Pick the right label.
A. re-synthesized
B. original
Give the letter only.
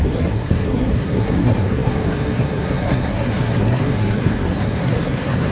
A